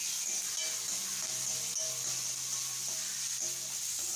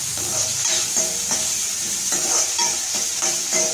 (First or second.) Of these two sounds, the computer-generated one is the second